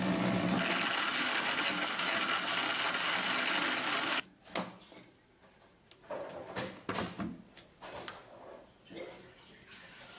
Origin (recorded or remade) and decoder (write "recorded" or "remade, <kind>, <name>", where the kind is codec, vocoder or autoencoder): recorded